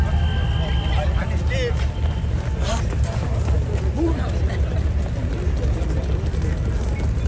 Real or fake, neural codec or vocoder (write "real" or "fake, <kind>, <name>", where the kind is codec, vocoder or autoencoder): real